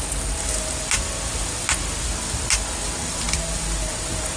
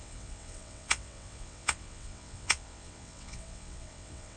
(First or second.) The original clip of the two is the first